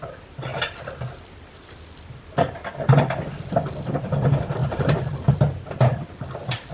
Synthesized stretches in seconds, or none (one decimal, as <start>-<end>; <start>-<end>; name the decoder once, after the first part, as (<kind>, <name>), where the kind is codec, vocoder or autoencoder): none